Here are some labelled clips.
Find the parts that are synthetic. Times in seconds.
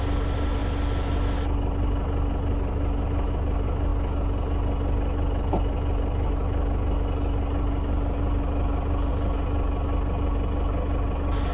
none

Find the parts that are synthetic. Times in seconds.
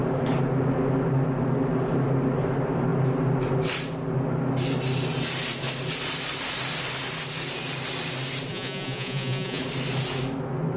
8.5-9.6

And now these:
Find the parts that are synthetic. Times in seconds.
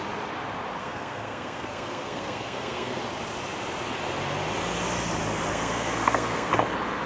0.8-3.0; 5.5-6.5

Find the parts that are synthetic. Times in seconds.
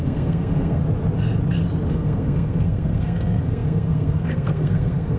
0.0-0.8; 1.9-5.2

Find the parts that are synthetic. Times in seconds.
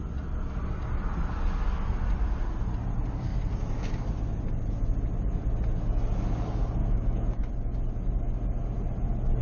6.8-7.5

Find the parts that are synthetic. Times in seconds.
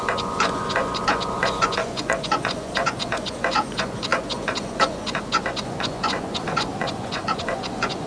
0.0-8.1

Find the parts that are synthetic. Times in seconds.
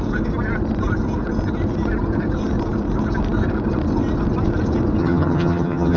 5.0-6.0